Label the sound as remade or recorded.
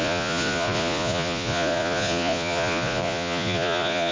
remade